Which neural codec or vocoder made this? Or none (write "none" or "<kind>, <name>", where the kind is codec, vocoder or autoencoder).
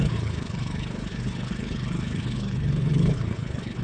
codec, HILCodec